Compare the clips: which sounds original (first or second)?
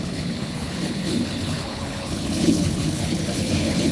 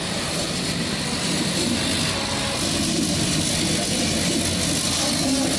second